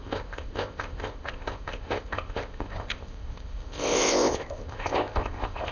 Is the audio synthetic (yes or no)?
yes